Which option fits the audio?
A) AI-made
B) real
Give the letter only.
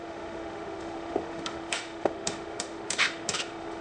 A